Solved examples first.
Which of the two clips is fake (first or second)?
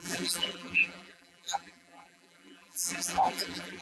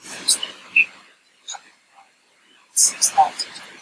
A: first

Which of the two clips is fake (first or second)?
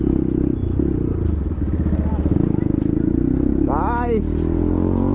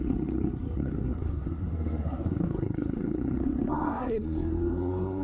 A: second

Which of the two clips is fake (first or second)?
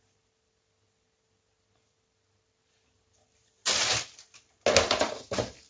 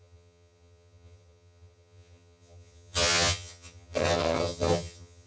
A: second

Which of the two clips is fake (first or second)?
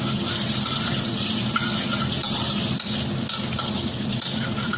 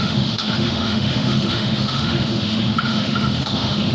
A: second